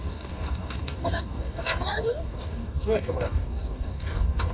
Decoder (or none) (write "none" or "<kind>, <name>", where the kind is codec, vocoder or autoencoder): codec, DAC